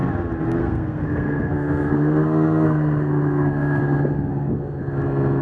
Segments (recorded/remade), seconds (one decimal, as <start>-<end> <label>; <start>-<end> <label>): 0.0-0.6 recorded; 0.6-3.8 remade; 3.8-4.3 recorded; 4.3-4.8 remade; 4.8-5.4 recorded

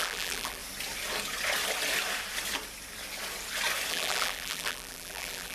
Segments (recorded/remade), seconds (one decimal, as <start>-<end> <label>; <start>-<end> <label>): 0.0-0.6 remade; 0.6-3.9 recorded; 3.9-5.5 remade

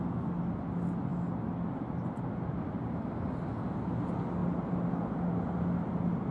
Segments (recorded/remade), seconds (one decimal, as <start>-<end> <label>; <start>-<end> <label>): 0.0-6.3 recorded

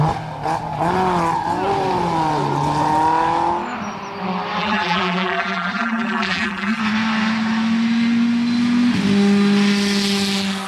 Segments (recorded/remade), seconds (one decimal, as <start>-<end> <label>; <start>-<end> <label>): 0.0-4.6 recorded; 4.6-6.8 remade; 6.8-10.7 recorded

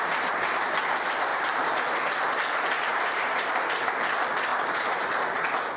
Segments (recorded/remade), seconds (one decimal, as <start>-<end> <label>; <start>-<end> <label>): 0.0-1.3 recorded; 1.3-1.8 remade; 1.8-2.9 recorded; 2.9-3.6 remade; 3.6-4.5 recorded; 4.5-5.1 remade; 5.1-5.8 recorded

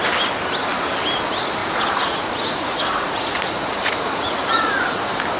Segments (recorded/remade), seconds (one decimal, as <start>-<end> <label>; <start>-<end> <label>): 0.0-1.6 recorded; 1.6-4.8 remade; 4.8-5.4 recorded

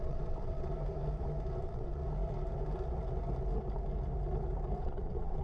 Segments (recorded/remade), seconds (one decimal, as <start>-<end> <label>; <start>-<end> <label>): 0.0-0.7 remade; 0.7-1.6 recorded; 1.6-2.0 remade; 2.0-4.8 recorded; 4.8-5.4 remade

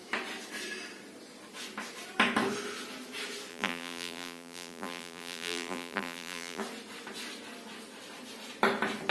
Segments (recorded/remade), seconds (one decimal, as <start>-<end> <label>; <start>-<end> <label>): 0.0-3.5 recorded; 3.5-6.6 remade; 6.6-9.1 recorded